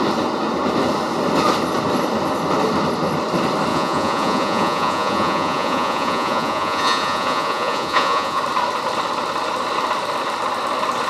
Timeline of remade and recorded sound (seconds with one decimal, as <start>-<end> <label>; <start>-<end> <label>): 0.0-3.7 recorded; 3.7-8.4 remade; 8.4-11.1 recorded